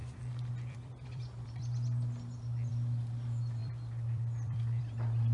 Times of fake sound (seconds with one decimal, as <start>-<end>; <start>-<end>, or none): 0.5-1.6; 2.7-5.3